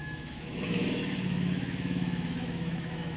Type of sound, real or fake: fake